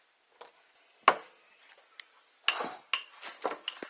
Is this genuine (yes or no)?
yes